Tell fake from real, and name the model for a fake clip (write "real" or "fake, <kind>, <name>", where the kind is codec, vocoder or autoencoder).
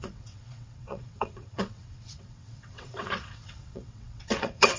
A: fake, vocoder, WaveNeXt